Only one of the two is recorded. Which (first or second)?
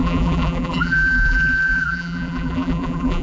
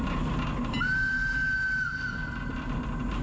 second